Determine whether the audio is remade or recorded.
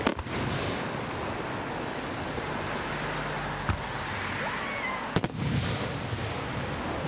recorded